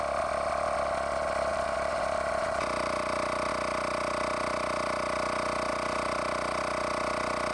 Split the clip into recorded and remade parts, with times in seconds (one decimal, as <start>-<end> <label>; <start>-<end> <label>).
0.0-1.5 recorded; 1.5-3.5 remade; 3.5-7.5 recorded